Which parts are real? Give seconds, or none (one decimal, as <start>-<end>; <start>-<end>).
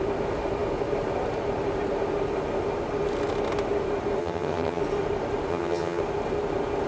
0.0-4.2; 4.8-5.5; 6.0-6.9